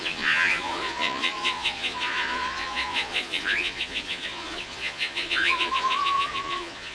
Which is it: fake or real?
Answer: fake